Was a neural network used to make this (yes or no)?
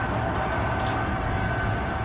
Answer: no